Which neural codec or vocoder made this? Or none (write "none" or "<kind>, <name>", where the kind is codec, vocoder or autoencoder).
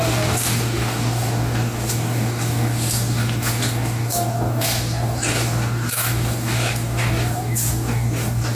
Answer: codec, DAC